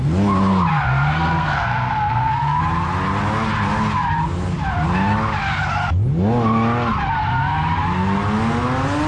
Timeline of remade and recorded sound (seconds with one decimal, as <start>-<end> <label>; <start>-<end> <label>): 0.0-0.7 recorded; 0.7-2.6 remade; 2.6-9.1 recorded